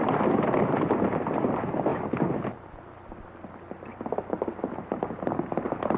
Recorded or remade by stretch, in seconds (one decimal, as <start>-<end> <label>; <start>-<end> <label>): 0.0-6.0 recorded